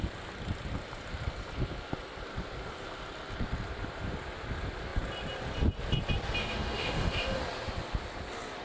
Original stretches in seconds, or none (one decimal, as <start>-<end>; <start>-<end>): 0.0-6.4; 7.4-8.6